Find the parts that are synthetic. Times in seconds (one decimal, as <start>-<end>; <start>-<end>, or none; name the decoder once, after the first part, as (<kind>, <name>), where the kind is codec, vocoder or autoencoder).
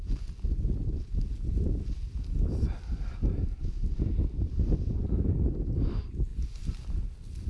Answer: none